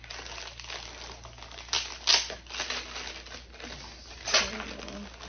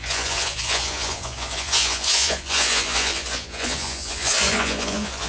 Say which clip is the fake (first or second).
second